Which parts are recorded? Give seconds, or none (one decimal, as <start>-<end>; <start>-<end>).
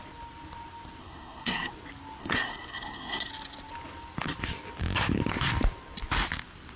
0.0-1.0; 1.7-2.2; 3.3-6.8